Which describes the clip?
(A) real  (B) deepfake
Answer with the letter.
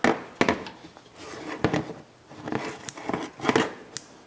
A